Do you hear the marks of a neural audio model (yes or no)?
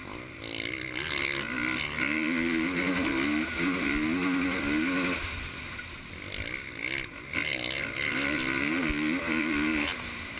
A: no